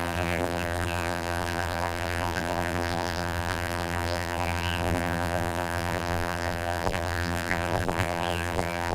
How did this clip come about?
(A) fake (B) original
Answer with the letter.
A